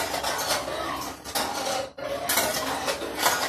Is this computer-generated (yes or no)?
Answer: no